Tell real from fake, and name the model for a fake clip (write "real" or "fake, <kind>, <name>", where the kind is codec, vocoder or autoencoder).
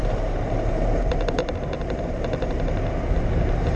fake, vocoder, BigVGAN v2